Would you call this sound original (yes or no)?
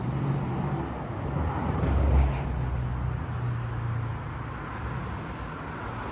yes